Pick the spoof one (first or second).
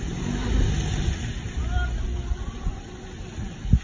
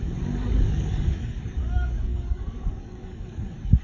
second